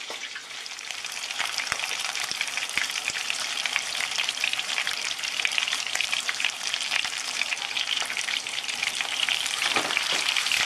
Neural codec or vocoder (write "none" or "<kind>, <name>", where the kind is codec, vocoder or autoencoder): vocoder, BigVGAN v2